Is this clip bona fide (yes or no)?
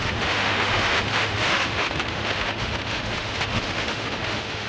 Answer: no